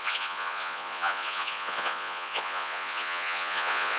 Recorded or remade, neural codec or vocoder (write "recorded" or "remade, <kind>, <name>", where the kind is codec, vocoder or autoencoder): remade, vocoder, Vocos